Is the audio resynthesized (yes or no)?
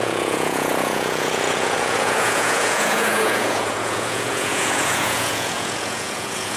yes